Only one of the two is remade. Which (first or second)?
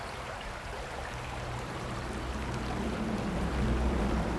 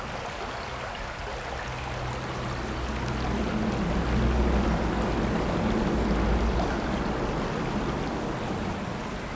first